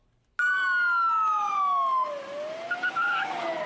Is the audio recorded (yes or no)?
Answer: yes